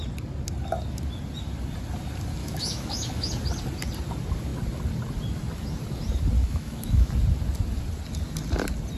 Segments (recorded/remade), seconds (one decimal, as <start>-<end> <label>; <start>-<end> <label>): 0.0-2.4 recorded; 2.4-3.3 remade; 3.3-6.4 recorded; 6.4-7.1 remade; 7.1-9.0 recorded

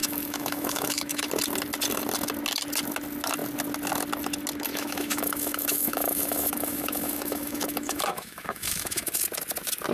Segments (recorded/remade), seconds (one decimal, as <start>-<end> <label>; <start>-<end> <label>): 0.0-1.3 remade; 1.3-4.7 recorded; 4.7-9.2 remade; 9.2-9.9 recorded